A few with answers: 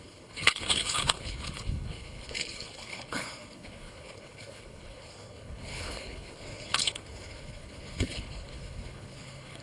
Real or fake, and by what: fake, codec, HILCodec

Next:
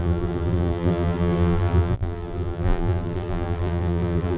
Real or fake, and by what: fake, vocoder, BigVGAN v2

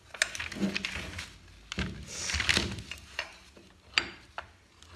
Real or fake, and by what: real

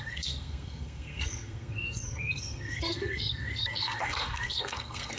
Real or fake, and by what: fake, codec, SNAC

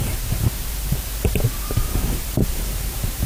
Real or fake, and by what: fake, vocoder, BigVGAN v2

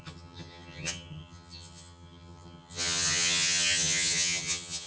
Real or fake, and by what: fake, vocoder, HiFi-GAN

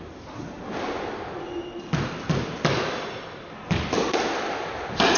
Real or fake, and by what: real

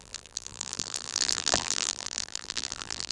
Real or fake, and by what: fake, vocoder, BigVGAN v2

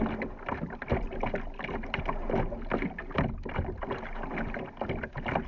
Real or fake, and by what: real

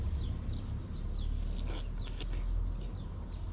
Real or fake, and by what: real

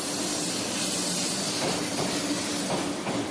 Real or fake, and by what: real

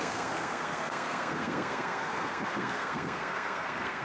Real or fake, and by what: fake, codec, SNAC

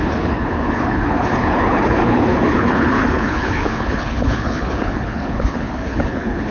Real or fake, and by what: fake, codec, HILCodec